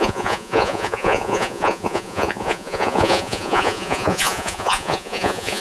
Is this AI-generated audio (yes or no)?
yes